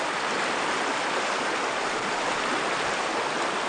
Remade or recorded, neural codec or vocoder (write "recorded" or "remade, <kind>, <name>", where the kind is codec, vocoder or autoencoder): recorded